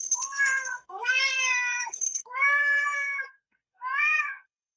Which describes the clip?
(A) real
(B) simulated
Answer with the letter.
B